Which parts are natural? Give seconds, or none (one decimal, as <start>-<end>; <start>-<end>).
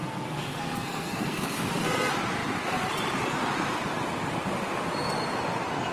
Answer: 1.7-5.9